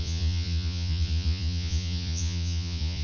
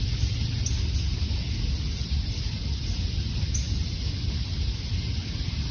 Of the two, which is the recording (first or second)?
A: second